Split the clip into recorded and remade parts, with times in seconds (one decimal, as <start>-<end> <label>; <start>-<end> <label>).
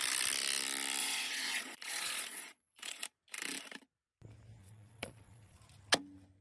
0.0-1.0 recorded; 1.0-3.0 remade; 3.0-4.6 recorded; 4.6-5.6 remade; 5.6-6.4 recorded